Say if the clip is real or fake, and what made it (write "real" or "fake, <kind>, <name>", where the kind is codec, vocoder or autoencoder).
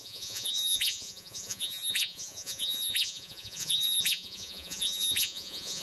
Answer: fake, vocoder, Vocos